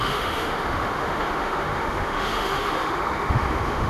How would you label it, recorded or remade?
remade